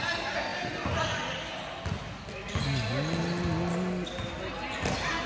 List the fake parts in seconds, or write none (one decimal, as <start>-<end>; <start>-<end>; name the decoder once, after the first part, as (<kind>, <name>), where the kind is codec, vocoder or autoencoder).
none